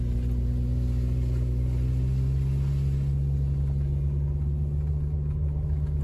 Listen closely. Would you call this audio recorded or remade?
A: recorded